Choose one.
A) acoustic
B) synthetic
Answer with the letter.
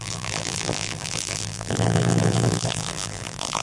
B